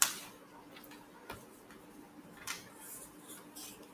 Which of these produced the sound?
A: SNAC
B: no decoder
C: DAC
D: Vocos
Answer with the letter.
B